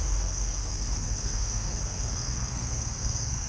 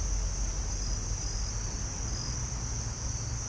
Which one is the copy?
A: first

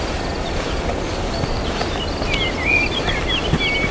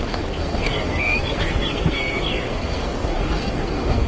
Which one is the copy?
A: second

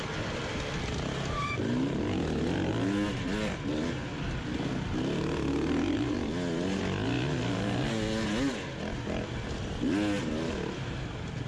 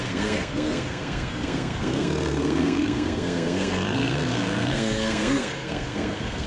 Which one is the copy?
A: second